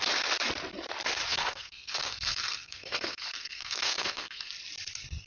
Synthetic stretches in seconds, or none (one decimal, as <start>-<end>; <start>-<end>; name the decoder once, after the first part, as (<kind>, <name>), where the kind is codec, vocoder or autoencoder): 1.3-4.5 (codec, SNAC)